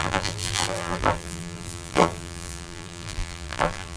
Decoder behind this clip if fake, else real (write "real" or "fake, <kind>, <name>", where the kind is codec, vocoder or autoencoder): fake, vocoder, BigVGAN v2